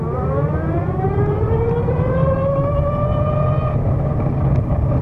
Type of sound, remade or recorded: recorded